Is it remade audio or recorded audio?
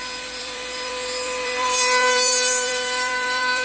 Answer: remade